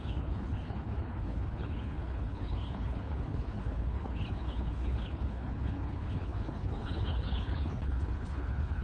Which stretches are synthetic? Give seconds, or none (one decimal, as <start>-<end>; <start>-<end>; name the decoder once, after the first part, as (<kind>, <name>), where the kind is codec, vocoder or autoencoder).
0.0-8.8 (codec, HILCodec)